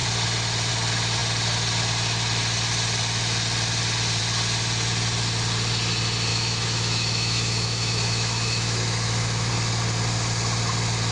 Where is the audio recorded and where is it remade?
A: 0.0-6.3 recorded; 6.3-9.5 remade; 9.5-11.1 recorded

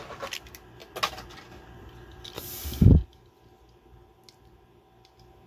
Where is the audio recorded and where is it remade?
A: 0.0-5.5 recorded